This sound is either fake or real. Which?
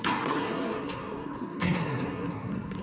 fake